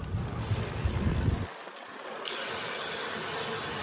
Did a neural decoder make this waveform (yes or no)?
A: no